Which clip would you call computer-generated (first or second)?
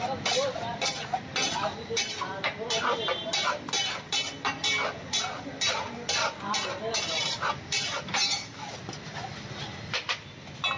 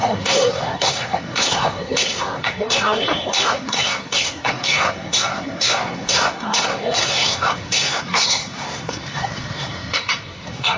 second